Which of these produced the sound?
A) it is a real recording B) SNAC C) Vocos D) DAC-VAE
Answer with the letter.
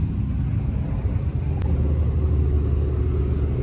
A